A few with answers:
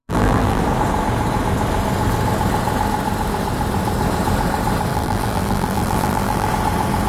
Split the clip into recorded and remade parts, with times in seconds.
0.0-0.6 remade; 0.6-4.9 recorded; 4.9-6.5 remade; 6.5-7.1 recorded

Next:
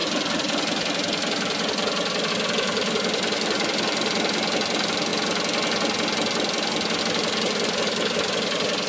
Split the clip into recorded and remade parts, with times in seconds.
0.0-8.9 recorded

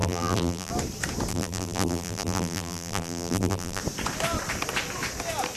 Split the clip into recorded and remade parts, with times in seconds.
0.0-0.7 remade; 0.7-1.3 recorded; 1.3-3.8 remade; 3.8-5.6 recorded

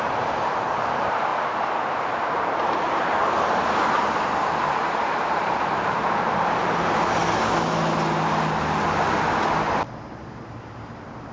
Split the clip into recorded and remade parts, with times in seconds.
0.0-7.2 remade; 7.2-10.1 recorded; 10.1-11.3 remade

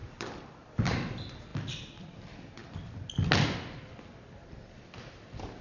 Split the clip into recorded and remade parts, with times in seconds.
0.0-0.5 remade; 0.5-1.5 recorded; 1.5-2.2 remade; 2.2-5.6 recorded

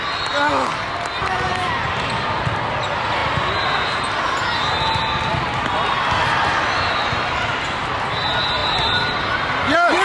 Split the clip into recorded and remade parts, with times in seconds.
0.0-10.0 recorded

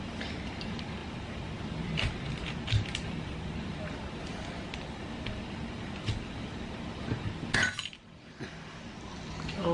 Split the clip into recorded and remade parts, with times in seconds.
0.0-9.7 recorded

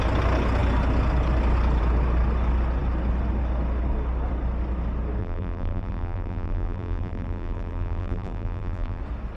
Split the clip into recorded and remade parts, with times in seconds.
0.0-5.2 recorded; 5.2-9.0 remade; 9.0-9.4 recorded